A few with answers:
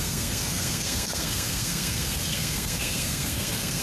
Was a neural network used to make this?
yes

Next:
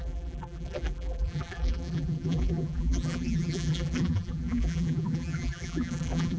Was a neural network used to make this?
yes